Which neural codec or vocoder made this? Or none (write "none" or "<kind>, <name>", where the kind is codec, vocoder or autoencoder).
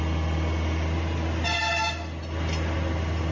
none